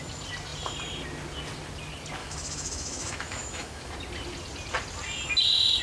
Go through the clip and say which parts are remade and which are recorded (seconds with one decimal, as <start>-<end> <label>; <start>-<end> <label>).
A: 0.0-2.2 recorded; 2.2-3.9 remade; 3.9-5.8 recorded